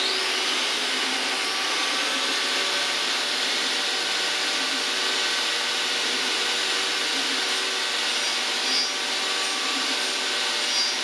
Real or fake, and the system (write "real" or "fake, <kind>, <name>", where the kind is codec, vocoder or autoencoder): real